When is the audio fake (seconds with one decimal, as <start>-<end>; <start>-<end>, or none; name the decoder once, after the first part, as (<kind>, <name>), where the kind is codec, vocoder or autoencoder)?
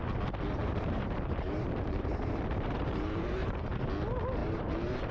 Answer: 0.6-3.7 (vocoder, BigVGAN v2); 4.4-5.1